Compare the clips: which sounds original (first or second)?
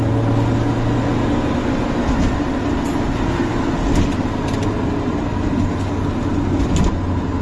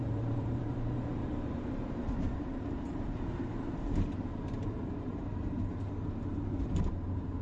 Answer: first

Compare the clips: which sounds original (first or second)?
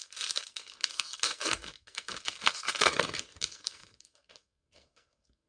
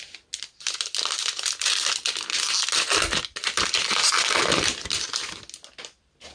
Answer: second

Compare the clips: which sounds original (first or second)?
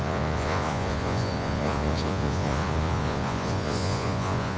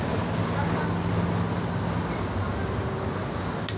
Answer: second